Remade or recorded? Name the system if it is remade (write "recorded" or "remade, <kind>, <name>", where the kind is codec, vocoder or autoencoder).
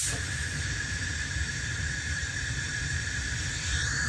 remade, vocoder, BigVGAN v2